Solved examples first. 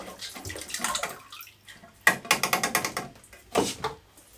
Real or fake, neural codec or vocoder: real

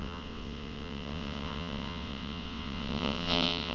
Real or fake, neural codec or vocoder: fake, vocoder, WaveNeXt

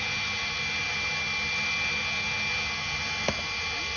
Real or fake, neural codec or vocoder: real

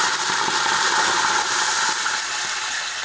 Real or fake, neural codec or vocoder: real